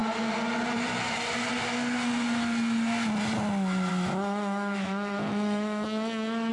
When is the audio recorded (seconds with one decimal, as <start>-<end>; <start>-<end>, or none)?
0.0-3.9